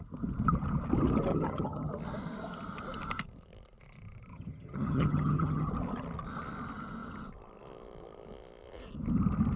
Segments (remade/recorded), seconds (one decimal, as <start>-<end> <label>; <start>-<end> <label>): 0.0-1.3 recorded; 1.3-1.9 remade; 1.9-4.3 recorded; 4.3-5.7 remade; 5.7-9.6 recorded